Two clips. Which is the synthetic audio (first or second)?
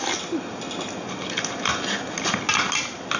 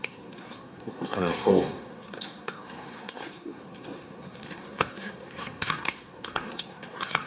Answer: second